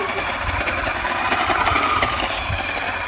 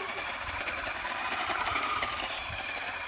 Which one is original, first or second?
first